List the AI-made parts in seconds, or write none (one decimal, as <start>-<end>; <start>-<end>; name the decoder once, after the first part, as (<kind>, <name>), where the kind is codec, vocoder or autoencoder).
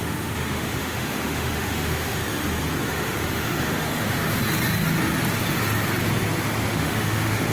0.0-2.2 (autoencoder, DAC-VAE); 2.9-4.4; 6.7-7.5